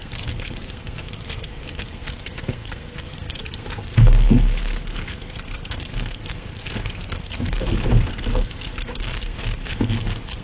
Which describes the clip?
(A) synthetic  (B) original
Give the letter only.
A